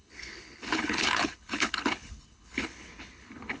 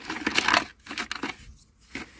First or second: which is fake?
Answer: first